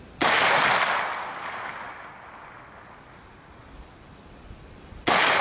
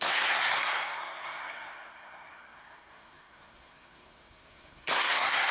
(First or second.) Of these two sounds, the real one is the first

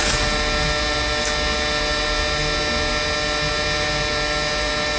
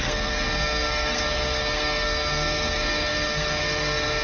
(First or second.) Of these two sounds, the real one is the first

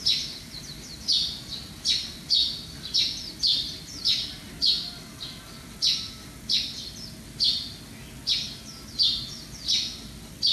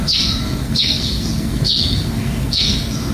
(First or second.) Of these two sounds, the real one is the first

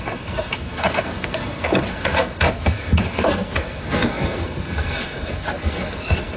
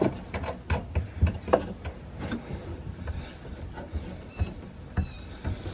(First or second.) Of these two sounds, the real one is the second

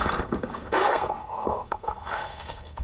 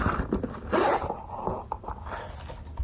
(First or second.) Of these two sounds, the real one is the second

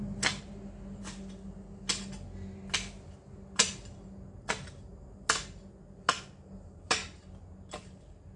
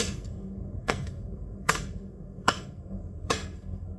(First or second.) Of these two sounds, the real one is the first